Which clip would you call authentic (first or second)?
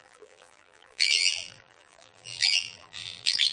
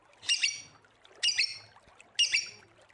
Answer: second